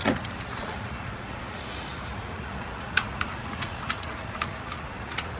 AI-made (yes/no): yes